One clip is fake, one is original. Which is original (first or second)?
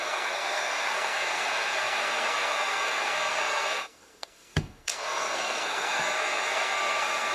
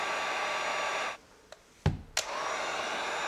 second